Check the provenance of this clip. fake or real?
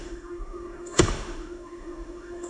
fake